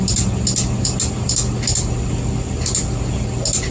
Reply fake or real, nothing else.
real